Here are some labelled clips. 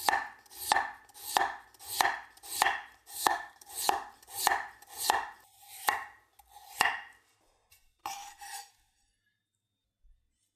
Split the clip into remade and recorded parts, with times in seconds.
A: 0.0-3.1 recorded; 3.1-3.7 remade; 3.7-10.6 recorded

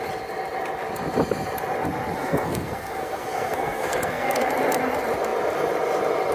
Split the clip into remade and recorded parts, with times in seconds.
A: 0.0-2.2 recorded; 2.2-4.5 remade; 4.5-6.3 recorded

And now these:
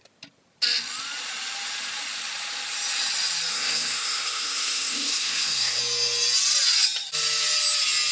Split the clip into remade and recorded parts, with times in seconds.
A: 0.0-3.5 recorded; 3.5-5.8 remade; 5.8-8.1 recorded

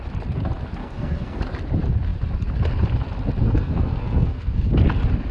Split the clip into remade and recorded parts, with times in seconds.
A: 0.0-0.8 recorded; 0.8-1.4 remade; 1.4-3.4 recorded; 3.4-4.7 remade; 4.7-5.3 recorded

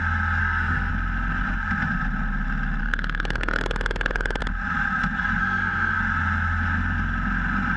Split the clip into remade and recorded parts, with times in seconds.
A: 0.0-0.4 recorded; 0.4-0.9 remade; 0.9-2.8 recorded; 2.8-4.4 remade; 4.4-5.4 recorded; 5.4-6.0 remade; 6.0-7.8 recorded

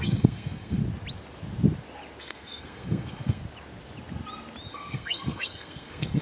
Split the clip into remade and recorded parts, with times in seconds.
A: 0.0-0.8 remade; 0.8-2.2 recorded; 2.2-3.4 remade; 3.4-4.7 recorded; 4.7-6.2 remade

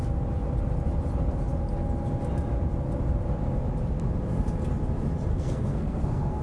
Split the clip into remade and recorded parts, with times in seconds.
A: 0.0-5.3 recorded; 5.3-6.4 remade

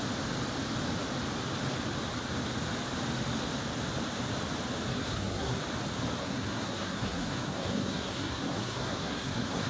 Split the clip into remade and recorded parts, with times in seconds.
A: 0.0-4.9 recorded; 4.9-5.6 remade; 5.6-6.2 recorded; 6.2-9.7 remade